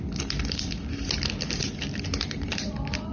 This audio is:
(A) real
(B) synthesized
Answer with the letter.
B